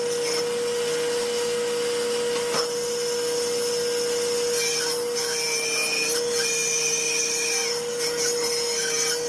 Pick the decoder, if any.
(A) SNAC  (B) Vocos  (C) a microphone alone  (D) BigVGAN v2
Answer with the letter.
C